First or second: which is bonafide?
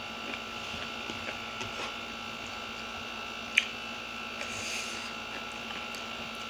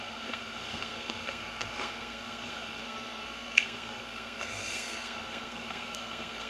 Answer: first